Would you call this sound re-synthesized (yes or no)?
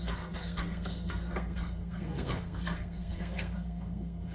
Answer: yes